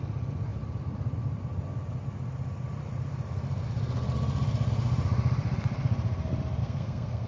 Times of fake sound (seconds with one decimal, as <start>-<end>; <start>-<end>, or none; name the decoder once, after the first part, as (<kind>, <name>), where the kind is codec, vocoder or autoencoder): 6.6-7.3 (codec, SNAC)